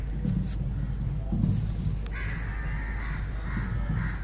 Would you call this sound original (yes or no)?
yes